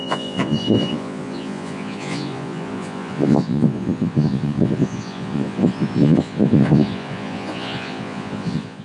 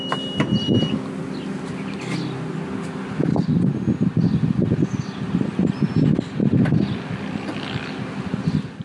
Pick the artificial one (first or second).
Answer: first